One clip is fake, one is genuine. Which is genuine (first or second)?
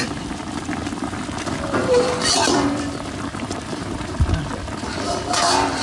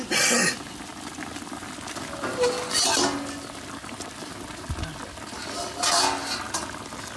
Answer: second